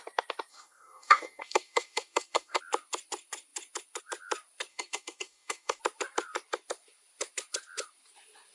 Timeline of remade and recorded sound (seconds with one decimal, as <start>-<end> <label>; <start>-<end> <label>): 0.0-0.5 recorded; 0.5-2.6 remade; 2.6-4.7 recorded; 4.7-5.8 remade; 5.8-8.5 recorded